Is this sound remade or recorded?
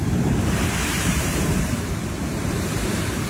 remade